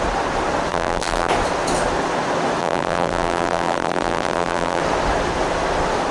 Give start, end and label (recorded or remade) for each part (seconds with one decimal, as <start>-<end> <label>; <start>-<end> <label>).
0.0-0.7 recorded; 0.7-1.3 remade; 1.3-2.6 recorded; 2.6-4.8 remade; 4.8-6.1 recorded